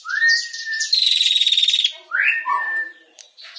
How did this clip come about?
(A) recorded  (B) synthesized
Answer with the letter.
B